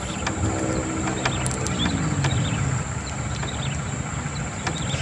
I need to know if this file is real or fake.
real